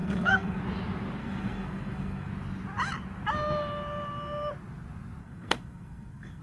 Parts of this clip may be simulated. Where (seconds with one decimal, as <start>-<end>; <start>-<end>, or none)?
0.0-0.6; 1.2-2.3; 5.2-6.4